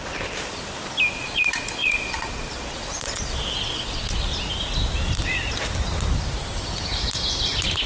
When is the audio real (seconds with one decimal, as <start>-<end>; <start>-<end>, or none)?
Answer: 0.0-1.2; 4.3-7.9